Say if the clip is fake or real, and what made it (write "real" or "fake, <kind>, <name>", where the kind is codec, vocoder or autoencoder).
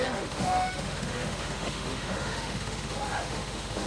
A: fake, autoencoder, DAC-VAE